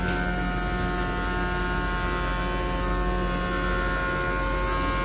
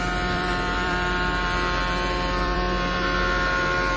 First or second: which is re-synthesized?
second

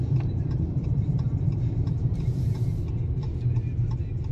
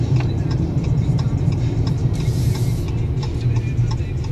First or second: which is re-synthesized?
first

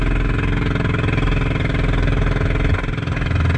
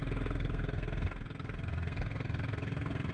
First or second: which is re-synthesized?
second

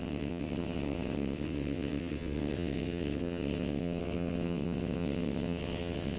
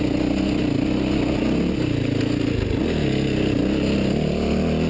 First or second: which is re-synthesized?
first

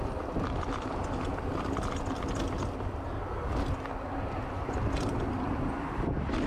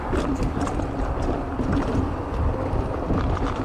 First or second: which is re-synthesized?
second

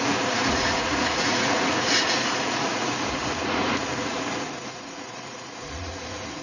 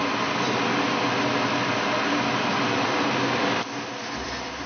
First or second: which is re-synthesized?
first